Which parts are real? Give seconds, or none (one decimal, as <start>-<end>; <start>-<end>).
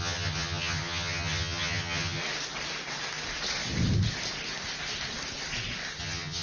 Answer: 2.2-6.0